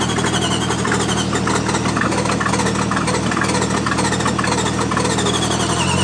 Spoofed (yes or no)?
no